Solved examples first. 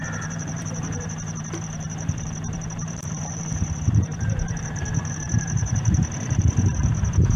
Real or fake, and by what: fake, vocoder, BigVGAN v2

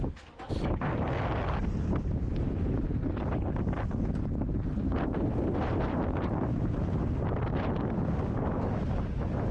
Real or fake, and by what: real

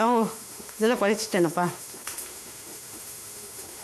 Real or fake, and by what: fake, autoencoder, DAC-VAE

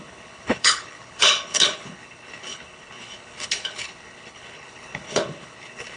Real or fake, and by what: fake, codec, HILCodec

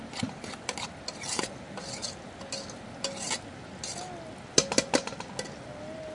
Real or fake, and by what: real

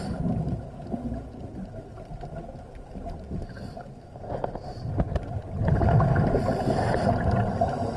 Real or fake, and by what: real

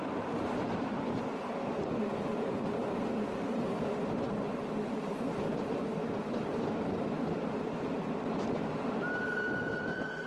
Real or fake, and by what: fake, vocoder, BigVGAN v2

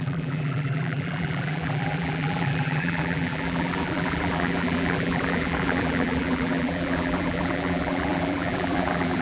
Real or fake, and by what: fake, vocoder, BigVGAN v2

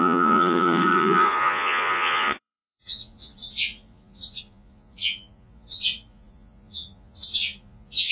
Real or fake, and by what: fake, vocoder, Vocos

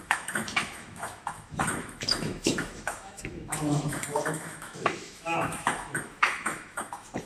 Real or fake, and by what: fake, autoencoder, DAC-VAE